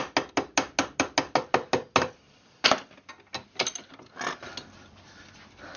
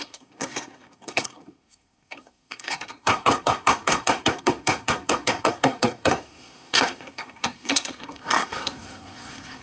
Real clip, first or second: first